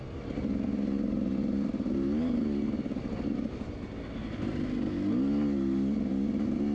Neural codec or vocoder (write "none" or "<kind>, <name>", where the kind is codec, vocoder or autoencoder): none